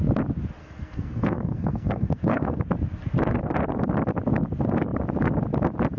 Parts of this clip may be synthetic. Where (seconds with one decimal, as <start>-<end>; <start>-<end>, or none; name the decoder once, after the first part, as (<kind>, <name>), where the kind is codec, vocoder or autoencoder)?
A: 0.6-2.6 (codec, SNAC)

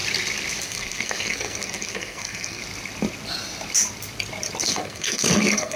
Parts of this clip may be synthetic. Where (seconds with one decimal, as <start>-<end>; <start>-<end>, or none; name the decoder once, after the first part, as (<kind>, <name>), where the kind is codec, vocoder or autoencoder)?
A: 0.6-2.6 (codec, SNAC); 4.6-5.8